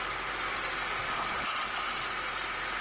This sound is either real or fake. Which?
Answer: real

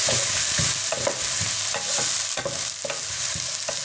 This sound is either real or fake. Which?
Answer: real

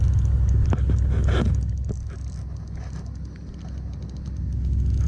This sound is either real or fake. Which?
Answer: real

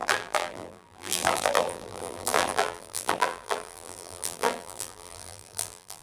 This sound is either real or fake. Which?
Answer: fake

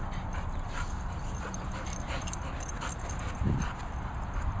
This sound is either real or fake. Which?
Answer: real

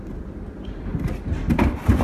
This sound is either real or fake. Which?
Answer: real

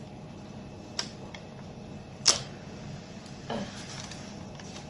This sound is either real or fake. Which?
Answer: real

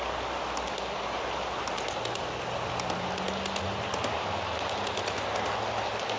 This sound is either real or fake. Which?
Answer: real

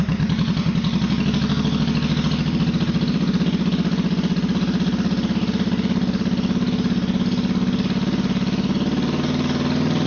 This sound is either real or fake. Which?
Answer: real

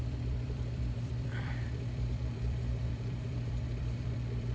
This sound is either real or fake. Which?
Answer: fake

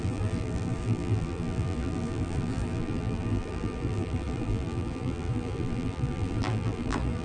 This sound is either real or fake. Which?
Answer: fake